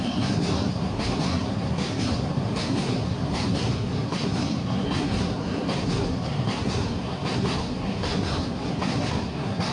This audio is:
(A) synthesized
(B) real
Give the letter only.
A